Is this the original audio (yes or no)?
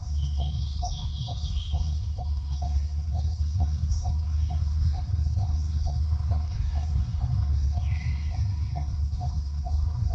no